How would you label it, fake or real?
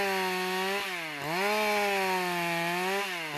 real